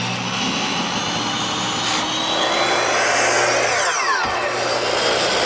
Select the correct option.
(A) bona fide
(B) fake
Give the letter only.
A